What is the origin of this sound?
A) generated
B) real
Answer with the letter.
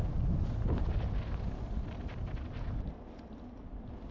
B